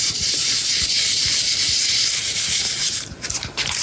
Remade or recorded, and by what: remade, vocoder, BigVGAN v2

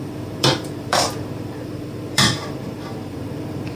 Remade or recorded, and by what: remade, vocoder, BigVGAN v2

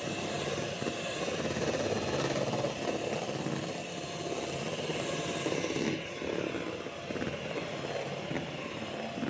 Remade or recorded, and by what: recorded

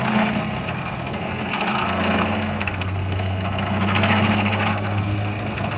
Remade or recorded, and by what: remade, codec, SNAC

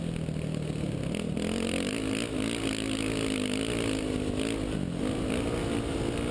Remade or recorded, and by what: recorded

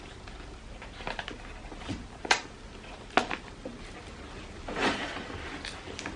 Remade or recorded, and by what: recorded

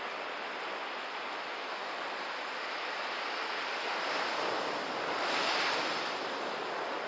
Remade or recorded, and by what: recorded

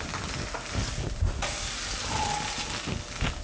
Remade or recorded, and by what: recorded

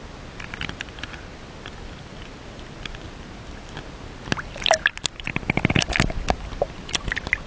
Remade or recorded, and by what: recorded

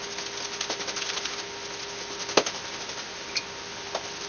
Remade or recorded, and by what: recorded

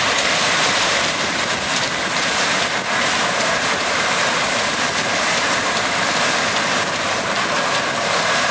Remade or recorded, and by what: remade, vocoder, BigVGAN v2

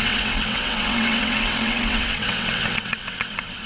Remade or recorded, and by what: remade, vocoder, WaveNeXt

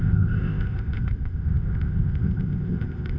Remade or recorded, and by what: remade, codec, ZipCodec